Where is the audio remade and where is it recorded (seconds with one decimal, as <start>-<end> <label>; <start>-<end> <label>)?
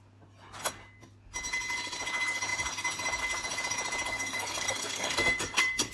0.0-4.1 recorded; 4.1-5.9 remade